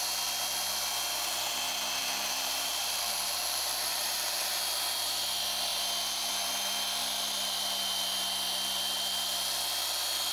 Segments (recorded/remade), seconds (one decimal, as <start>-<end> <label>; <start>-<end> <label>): 0.0-2.0 recorded; 2.0-5.2 remade; 5.2-10.3 recorded

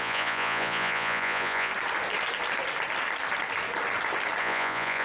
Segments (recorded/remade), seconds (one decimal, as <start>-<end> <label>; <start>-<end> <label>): 0.0-1.7 remade; 1.7-4.4 recorded; 4.4-5.0 remade

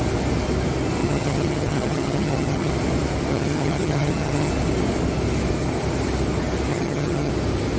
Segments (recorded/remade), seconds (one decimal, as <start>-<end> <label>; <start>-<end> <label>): 0.0-1.0 recorded; 1.0-2.7 remade; 2.7-3.3 recorded; 3.3-4.5 remade; 4.5-6.7 recorded; 6.7-7.3 remade; 7.3-7.8 recorded

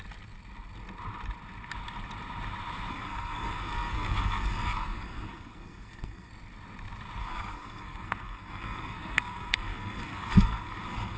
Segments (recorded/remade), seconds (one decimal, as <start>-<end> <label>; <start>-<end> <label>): 0.0-2.9 recorded; 2.9-6.3 remade; 6.3-7.2 recorded; 7.2-11.2 remade

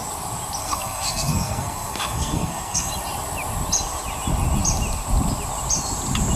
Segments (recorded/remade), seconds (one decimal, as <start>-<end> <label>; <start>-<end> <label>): 0.0-0.6 recorded; 0.6-2.9 remade; 2.9-6.4 recorded

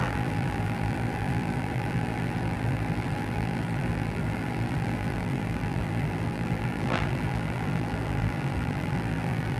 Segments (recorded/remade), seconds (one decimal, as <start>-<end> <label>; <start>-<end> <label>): 0.0-9.6 remade

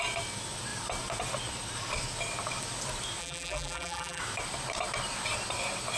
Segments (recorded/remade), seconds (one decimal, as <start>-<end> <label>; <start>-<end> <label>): 0.0-3.2 recorded; 3.2-4.2 remade; 4.2-6.0 recorded